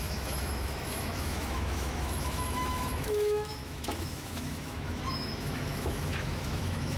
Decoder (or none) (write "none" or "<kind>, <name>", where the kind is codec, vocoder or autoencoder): autoencoder, DAC-VAE